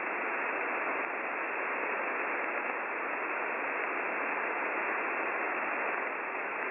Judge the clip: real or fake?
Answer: real